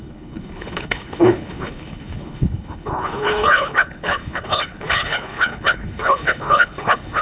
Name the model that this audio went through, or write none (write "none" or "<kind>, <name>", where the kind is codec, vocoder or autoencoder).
codec, HILCodec